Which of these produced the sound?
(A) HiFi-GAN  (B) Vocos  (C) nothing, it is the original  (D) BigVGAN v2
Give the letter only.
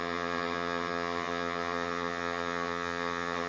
A